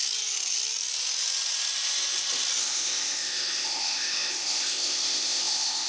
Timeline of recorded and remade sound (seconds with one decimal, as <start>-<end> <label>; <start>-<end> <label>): 0.0-2.6 recorded; 2.6-5.9 remade

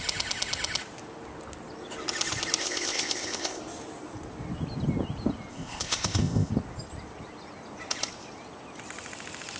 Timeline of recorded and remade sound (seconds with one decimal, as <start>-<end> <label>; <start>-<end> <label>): 0.0-2.6 recorded; 2.6-3.6 remade; 3.6-5.5 recorded; 5.5-6.5 remade; 6.5-9.6 recorded

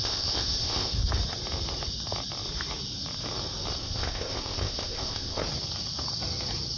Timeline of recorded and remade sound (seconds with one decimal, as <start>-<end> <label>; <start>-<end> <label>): 0.0-1.0 remade; 1.0-3.8 recorded; 3.8-5.4 remade; 5.4-6.8 recorded

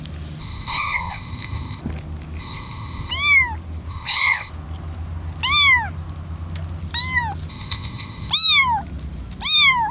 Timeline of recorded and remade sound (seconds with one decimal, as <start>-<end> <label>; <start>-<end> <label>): 0.0-0.4 recorded; 0.4-1.8 remade; 1.8-2.4 recorded; 2.4-3.1 remade; 3.1-3.9 recorded; 3.9-4.5 remade; 4.5-7.5 recorded; 7.5-8.3 remade; 8.3-9.9 recorded

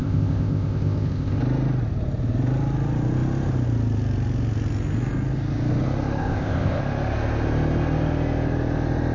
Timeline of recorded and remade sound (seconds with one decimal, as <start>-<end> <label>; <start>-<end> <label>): 0.0-1.4 remade; 1.4-6.2 recorded; 6.2-6.8 remade; 6.8-9.1 recorded

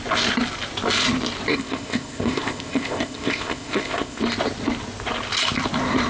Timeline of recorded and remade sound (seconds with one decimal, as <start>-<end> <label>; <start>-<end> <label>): 0.0-1.5 recorded; 1.5-4.2 remade; 4.2-6.1 recorded

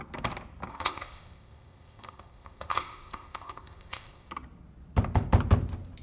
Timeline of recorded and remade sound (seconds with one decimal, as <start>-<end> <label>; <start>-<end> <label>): 0.0-0.7 recorded; 0.7-4.3 remade; 4.3-6.0 recorded

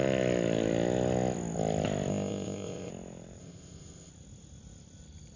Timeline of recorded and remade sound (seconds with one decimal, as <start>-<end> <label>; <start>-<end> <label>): 0.0-2.1 recorded; 2.1-2.9 remade; 2.9-3.4 recorded; 3.4-4.1 remade; 4.1-5.4 recorded